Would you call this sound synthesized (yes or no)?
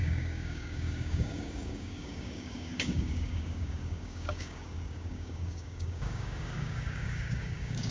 yes